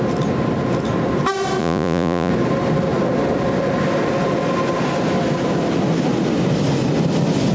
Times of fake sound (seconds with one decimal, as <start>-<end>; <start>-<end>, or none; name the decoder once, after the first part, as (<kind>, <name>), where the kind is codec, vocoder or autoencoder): 1.6-2.3 (vocoder, Vocos)